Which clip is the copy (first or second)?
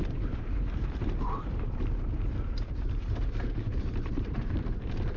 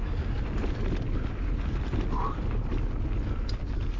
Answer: first